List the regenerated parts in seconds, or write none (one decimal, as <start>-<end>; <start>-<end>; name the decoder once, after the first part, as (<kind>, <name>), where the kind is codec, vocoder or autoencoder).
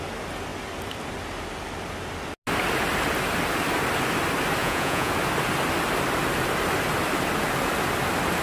4.6-5.1 (vocoder, Vocos)